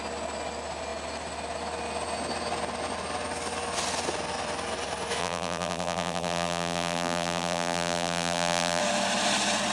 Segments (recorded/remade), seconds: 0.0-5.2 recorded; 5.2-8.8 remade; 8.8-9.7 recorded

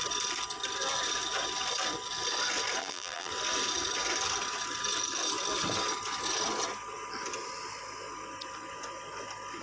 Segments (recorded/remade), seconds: 0.0-2.8 recorded; 2.8-3.3 remade; 3.3-9.6 recorded

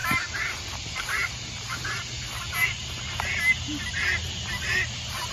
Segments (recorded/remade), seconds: 0.0-5.3 recorded

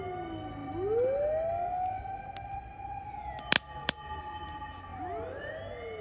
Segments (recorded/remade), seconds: 0.0-4.9 recorded; 4.9-5.5 remade; 5.5-6.0 recorded

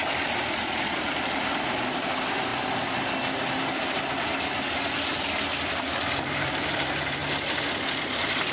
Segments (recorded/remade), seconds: 0.0-2.5 remade; 2.5-5.7 recorded; 5.7-7.2 remade; 7.2-8.0 recorded; 8.0-8.5 remade

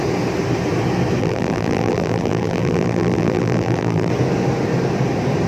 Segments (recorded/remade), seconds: 0.0-1.2 recorded; 1.2-4.1 remade; 4.1-5.5 recorded

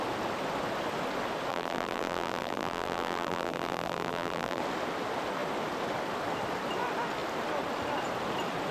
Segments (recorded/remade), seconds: 0.0-1.5 recorded; 1.5-4.6 remade; 4.6-8.7 recorded

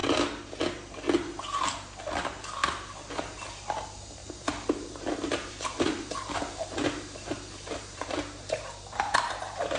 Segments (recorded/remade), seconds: 0.0-2.6 recorded; 2.6-3.4 remade; 3.4-4.2 recorded; 4.2-9.3 remade; 9.3-9.8 recorded